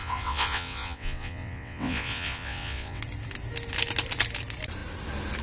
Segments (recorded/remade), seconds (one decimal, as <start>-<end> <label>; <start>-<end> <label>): 0.0-3.0 remade; 3.0-5.4 recorded